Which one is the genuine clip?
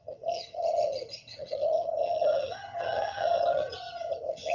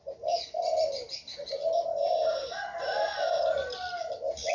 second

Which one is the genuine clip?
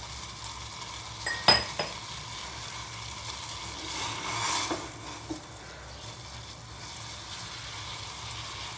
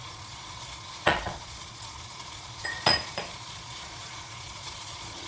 first